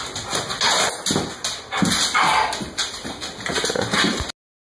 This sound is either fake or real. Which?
real